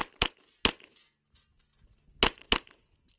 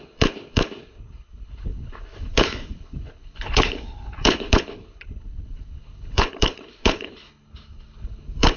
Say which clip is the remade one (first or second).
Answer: second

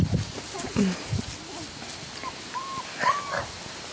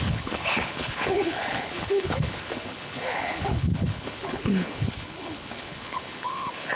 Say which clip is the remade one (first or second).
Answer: second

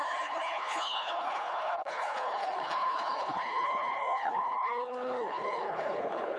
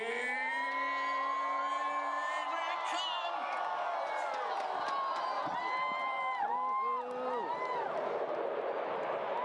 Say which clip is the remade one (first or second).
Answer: first